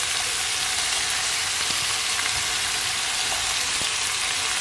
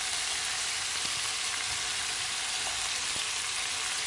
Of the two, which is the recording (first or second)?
first